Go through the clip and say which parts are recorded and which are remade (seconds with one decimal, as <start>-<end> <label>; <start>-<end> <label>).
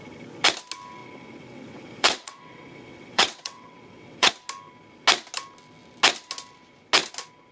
0.0-1.0 recorded; 1.0-4.3 remade; 4.3-7.5 recorded